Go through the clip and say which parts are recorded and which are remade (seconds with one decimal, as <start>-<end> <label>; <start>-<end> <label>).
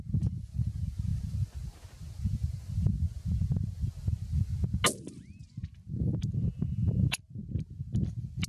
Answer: 0.0-8.5 recorded